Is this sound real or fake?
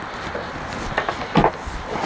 real